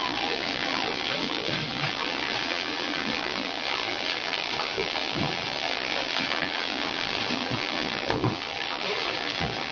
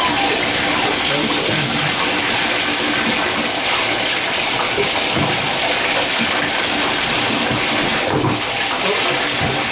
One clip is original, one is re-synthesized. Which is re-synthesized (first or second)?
first